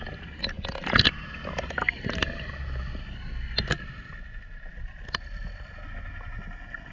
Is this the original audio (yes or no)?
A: yes